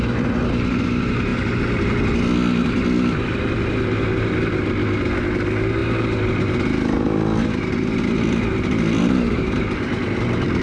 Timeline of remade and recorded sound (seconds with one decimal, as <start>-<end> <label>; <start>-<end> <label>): 0.0-10.6 recorded